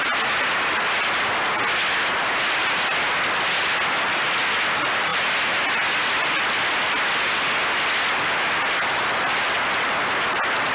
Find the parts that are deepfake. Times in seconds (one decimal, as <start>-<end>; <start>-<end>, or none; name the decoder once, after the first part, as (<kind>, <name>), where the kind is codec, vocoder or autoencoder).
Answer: none